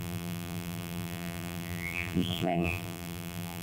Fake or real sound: fake